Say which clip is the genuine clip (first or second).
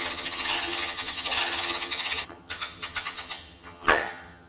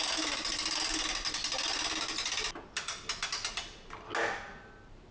second